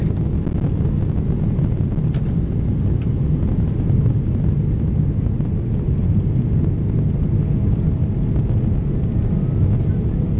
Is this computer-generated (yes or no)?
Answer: no